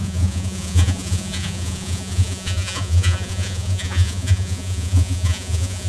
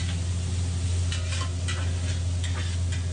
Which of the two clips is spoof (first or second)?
first